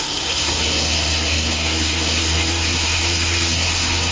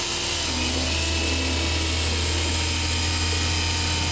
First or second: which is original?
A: second